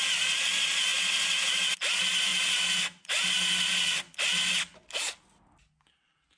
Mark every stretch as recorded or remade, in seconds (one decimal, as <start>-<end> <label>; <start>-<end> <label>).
0.0-6.4 recorded